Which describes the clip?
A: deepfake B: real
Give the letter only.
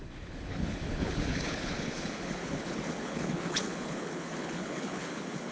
A